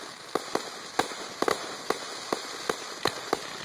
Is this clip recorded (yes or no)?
yes